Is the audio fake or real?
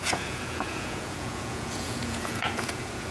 fake